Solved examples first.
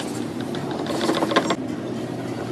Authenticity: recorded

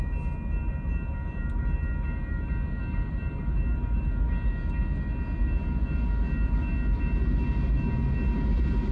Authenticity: recorded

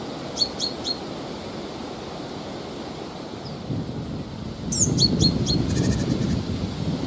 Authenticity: recorded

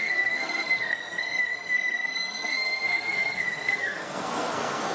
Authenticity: remade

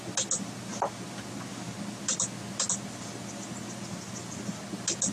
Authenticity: recorded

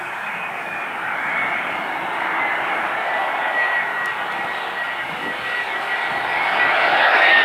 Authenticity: remade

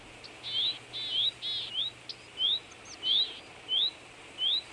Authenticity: recorded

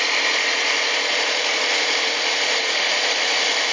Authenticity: remade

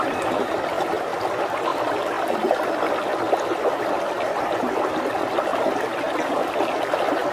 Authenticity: recorded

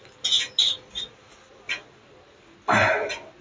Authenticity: recorded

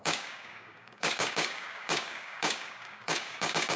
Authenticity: remade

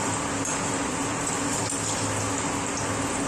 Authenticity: recorded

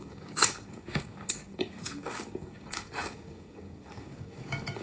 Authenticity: remade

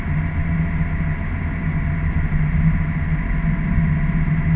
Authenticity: recorded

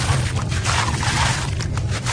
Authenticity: recorded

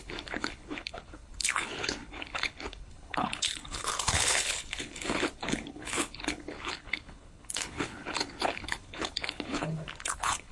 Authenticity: remade